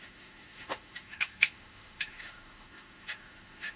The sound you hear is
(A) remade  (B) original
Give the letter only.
A